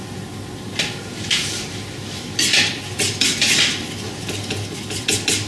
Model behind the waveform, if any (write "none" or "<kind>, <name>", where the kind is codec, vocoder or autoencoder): none